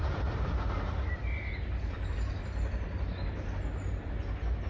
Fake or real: real